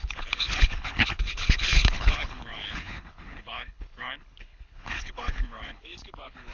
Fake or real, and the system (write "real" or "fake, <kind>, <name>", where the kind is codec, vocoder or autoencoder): fake, codec, HILCodec